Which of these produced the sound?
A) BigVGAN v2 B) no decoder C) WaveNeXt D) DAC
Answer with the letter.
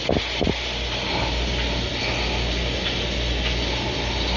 B